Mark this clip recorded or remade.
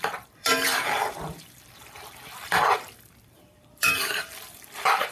remade